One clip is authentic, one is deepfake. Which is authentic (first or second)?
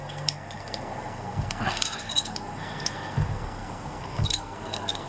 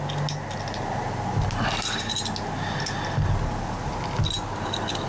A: second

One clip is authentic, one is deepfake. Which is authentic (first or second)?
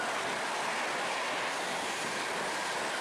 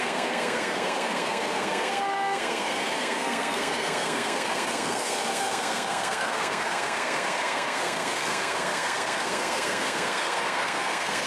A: first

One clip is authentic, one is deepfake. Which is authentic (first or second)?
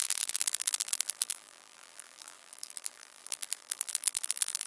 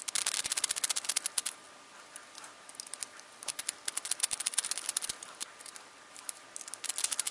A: second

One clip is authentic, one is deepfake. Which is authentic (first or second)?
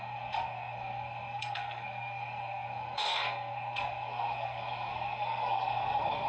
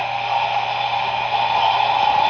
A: second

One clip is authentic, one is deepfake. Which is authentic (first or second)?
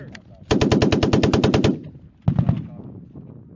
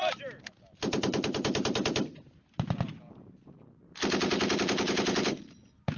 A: first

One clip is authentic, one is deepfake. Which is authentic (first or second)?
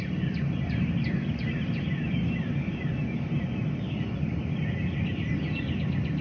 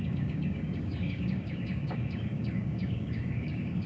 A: first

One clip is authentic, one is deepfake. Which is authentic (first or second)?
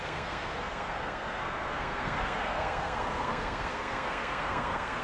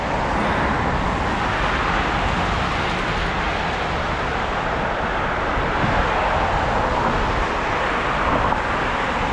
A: second